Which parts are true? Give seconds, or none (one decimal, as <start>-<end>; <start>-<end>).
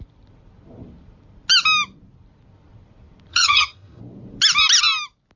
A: 0.0-3.3; 4.0-5.4